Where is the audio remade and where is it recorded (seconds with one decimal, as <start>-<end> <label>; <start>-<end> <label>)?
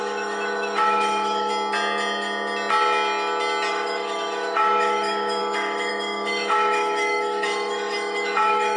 0.0-1.5 remade; 1.5-3.7 recorded; 3.7-8.8 remade